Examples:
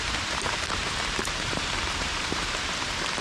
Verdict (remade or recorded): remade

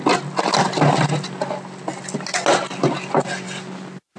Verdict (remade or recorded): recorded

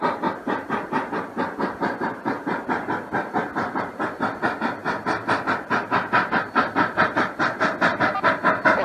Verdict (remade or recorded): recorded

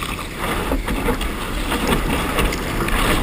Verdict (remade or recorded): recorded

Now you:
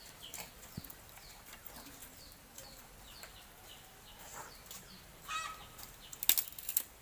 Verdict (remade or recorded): recorded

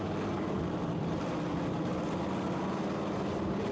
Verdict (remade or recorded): recorded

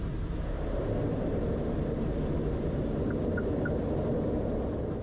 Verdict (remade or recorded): remade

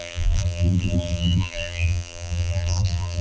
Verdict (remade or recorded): remade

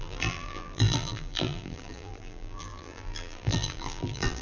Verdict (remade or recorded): remade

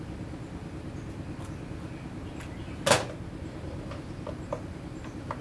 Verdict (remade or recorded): recorded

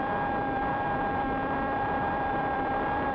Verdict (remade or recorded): remade